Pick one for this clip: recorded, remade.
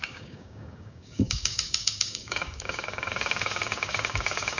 remade